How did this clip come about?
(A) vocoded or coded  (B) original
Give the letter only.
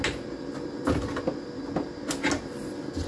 B